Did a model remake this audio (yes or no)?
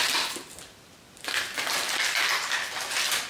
no